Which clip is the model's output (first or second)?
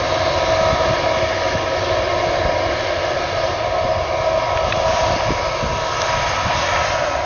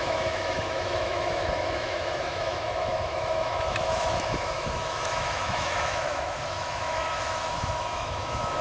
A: second